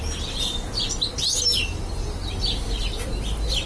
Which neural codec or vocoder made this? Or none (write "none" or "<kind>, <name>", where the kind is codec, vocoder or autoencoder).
none